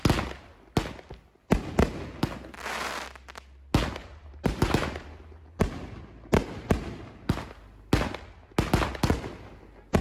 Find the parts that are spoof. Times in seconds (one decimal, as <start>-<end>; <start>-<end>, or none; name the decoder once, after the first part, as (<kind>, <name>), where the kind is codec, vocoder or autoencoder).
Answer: 4.0-5.7 (vocoder, BigVGAN v2)